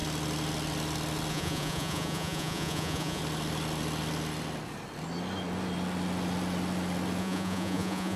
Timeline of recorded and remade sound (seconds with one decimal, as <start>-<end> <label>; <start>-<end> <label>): 0.0-1.3 recorded; 1.3-3.2 remade; 3.2-7.2 recorded; 7.2-8.2 remade